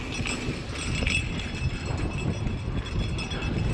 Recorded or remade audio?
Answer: recorded